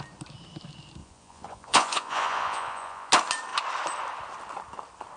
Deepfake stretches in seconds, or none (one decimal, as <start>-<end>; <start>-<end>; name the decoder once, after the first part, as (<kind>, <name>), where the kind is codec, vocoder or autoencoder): 1.0-3.1 (vocoder, Vocos)